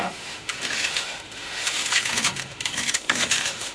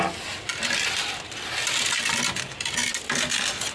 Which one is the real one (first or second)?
second